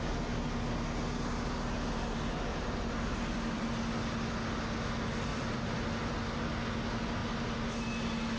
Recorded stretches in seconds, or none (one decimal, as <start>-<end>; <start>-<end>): 0.0-2.5; 3.7-5.3; 6.1-8.4